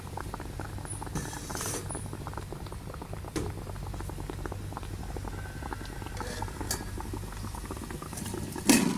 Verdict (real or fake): real